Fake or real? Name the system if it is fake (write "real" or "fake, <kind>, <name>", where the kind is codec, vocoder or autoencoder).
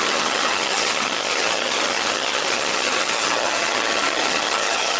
fake, vocoder, HiFi-GAN